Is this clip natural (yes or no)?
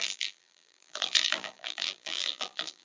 no